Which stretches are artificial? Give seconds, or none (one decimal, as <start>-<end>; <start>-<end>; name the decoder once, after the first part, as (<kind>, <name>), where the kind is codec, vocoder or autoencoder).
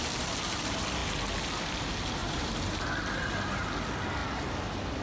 2.2-2.8 (vocoder, BigVGAN v2)